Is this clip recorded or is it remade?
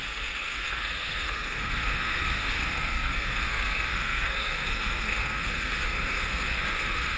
remade